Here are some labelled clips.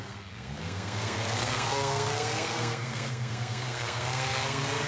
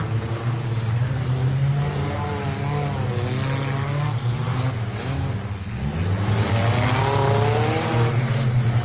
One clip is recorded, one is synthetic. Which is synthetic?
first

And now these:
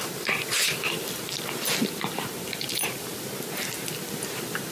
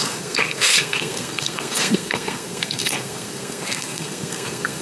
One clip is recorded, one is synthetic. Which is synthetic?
second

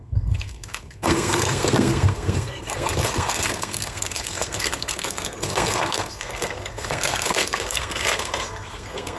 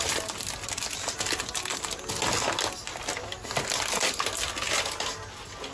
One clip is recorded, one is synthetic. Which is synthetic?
first